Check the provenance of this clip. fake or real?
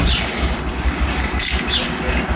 fake